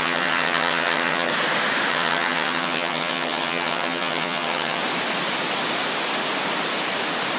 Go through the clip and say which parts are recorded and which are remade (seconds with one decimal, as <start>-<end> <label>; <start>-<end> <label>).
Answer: 0.0-1.3 remade; 1.3-1.9 recorded; 1.9-4.8 remade; 4.8-7.4 recorded